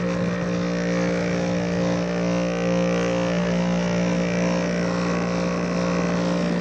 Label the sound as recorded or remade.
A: recorded